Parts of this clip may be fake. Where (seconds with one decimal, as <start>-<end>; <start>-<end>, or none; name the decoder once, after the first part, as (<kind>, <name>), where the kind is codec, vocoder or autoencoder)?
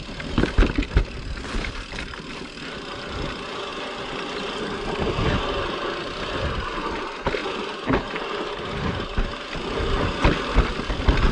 none